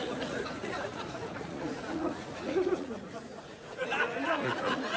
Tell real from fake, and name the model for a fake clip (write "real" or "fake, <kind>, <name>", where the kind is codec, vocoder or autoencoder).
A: fake, vocoder, Vocos